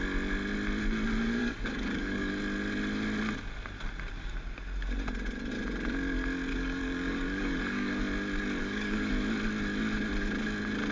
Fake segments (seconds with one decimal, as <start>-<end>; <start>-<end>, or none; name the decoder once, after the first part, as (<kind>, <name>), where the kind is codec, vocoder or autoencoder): 1.4-2.3 (codec, DAC); 6.5-8.0; 8.6-9.1